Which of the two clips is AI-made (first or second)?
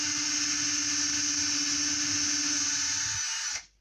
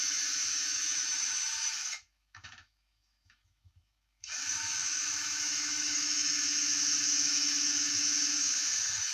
second